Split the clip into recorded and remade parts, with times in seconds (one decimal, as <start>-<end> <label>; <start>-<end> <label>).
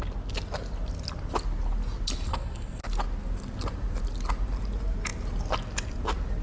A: 0.0-2.3 recorded; 2.3-2.8 remade; 2.8-6.4 recorded